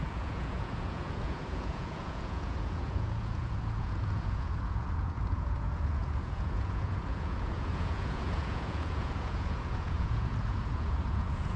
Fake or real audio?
fake